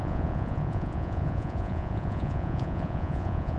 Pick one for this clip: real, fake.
fake